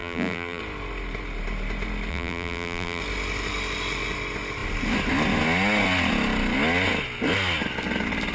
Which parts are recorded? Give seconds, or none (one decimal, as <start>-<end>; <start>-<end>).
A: 0.6-2.1; 3.0-8.3